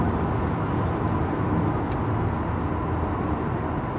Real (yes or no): yes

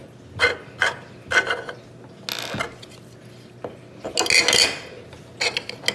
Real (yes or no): yes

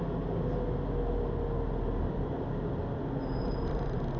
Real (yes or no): yes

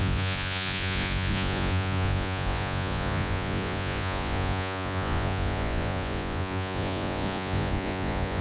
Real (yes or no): no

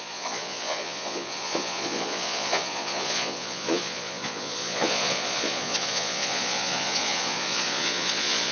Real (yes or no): no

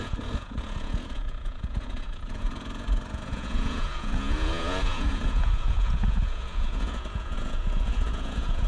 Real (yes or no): no